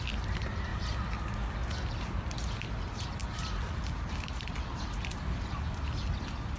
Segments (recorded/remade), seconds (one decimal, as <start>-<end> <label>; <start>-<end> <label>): 0.0-6.6 recorded